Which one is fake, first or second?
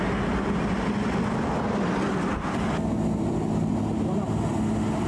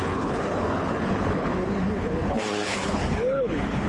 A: second